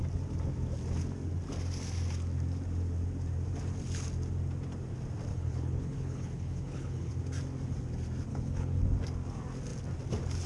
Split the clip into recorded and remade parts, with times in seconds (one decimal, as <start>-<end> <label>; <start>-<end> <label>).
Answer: 0.0-5.3 recorded; 5.3-7.1 remade; 7.1-8.3 recorded; 8.3-8.8 remade; 8.8-10.5 recorded